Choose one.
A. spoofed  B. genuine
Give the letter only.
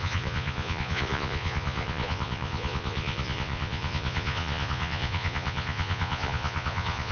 A